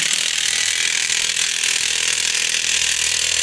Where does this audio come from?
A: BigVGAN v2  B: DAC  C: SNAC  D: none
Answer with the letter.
A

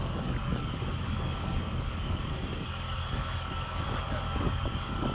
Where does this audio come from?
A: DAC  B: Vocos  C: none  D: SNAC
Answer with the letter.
A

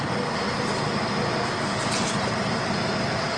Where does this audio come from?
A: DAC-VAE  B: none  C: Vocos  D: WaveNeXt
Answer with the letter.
B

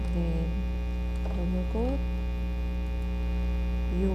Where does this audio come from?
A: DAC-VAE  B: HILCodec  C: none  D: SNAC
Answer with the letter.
C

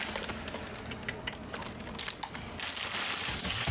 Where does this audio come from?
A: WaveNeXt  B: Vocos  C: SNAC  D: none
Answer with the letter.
D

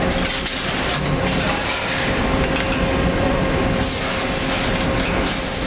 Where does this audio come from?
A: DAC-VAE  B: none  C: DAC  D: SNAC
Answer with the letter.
B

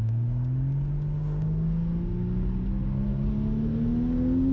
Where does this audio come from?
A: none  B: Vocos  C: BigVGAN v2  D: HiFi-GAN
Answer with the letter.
A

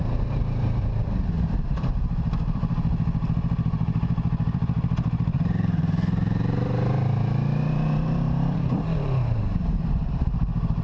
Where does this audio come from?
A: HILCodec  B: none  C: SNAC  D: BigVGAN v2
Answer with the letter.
D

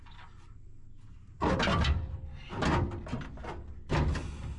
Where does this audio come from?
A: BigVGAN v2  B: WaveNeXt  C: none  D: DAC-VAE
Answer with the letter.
C